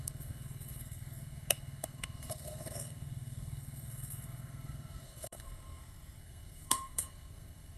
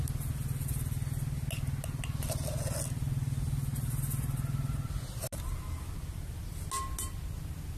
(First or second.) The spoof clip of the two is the first